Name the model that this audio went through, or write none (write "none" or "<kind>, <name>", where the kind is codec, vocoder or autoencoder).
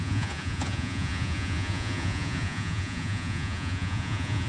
vocoder, Vocos